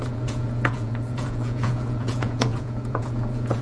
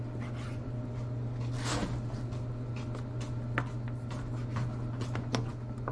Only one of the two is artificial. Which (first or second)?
first